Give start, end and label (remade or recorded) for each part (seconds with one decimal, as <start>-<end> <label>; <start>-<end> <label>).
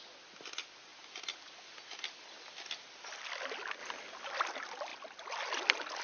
0.0-6.0 recorded